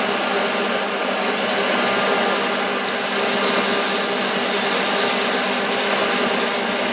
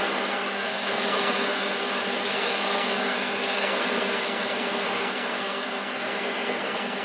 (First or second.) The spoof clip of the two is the second